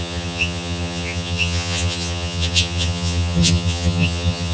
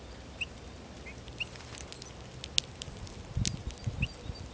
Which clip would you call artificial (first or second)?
first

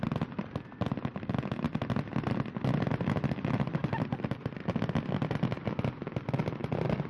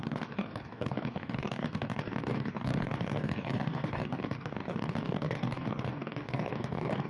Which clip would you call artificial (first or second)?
second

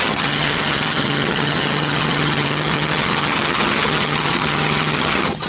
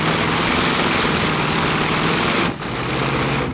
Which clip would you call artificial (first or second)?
first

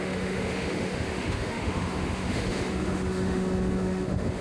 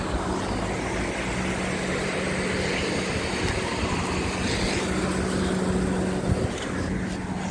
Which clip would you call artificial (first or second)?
first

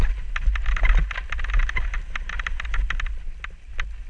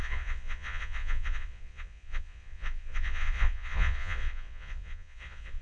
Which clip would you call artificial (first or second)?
second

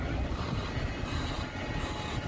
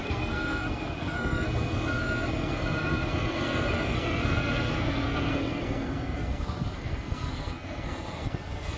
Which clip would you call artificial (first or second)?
second